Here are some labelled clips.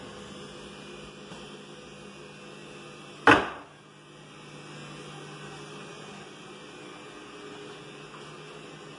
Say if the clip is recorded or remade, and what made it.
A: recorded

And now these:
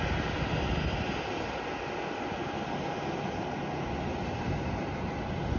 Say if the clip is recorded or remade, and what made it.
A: recorded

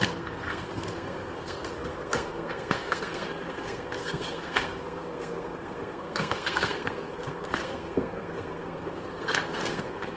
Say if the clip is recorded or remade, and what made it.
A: remade, codec, SNAC